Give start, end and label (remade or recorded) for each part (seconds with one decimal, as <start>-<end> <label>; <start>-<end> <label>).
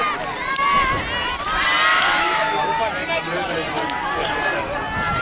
0.0-1.9 recorded; 1.9-2.6 remade; 2.6-5.2 recorded